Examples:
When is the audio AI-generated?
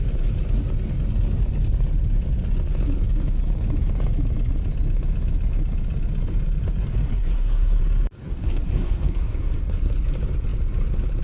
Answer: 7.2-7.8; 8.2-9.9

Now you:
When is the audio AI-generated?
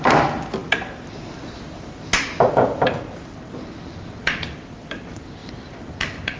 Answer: 5.4-6.4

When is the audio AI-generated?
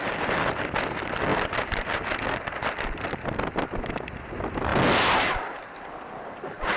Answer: 0.0-4.7; 5.3-6.8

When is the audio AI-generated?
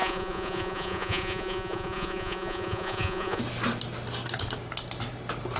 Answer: 0.0-3.4